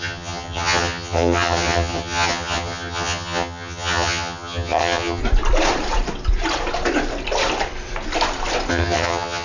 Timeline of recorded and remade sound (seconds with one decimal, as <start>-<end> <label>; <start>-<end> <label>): 0.0-5.2 remade; 5.2-8.7 recorded; 8.7-9.4 remade